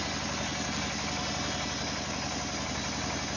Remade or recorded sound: recorded